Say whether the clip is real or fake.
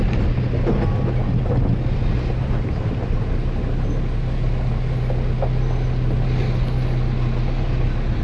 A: real